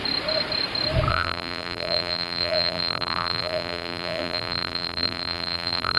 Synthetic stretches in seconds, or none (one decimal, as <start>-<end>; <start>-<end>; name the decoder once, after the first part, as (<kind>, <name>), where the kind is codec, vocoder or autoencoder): 1.1-6.0 (vocoder, BigVGAN v2)